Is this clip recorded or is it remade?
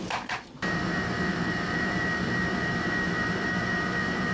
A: remade